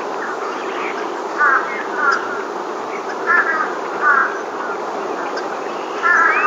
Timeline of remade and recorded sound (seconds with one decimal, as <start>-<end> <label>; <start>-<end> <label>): 0.0-6.5 recorded